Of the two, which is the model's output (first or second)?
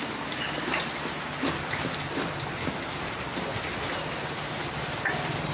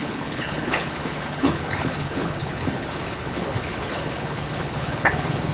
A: second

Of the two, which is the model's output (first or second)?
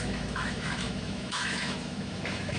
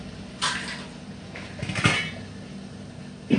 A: first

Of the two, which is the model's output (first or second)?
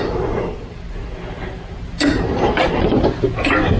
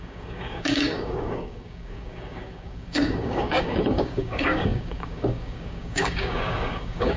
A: second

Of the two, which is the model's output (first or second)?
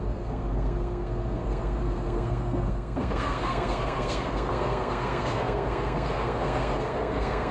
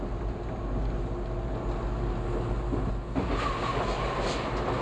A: first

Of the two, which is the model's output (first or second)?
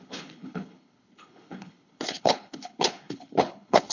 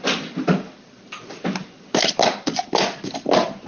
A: first